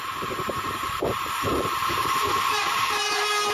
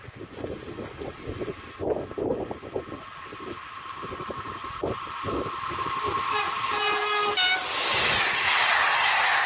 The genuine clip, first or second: second